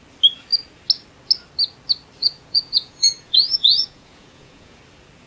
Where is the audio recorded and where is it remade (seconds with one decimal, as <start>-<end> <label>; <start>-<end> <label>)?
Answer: 0.0-2.2 recorded; 2.2-4.8 remade; 4.8-5.3 recorded